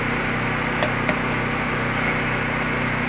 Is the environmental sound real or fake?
real